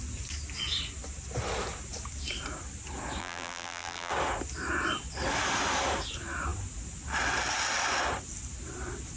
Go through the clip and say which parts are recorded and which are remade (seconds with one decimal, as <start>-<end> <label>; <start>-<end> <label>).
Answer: 0.0-3.2 recorded; 3.2-4.1 remade; 4.1-9.2 recorded